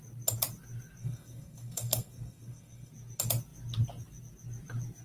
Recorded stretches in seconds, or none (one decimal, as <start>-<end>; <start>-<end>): 0.0-1.0; 2.9-5.0